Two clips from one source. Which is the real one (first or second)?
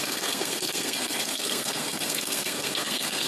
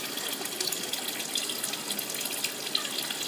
second